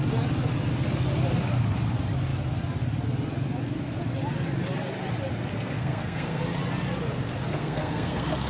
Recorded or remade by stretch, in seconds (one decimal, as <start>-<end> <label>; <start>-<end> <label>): 0.0-5.5 recorded; 5.5-6.4 remade; 6.4-7.5 recorded; 7.5-8.5 remade